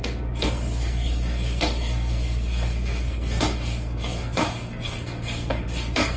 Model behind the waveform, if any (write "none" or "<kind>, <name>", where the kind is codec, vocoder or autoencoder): codec, SNAC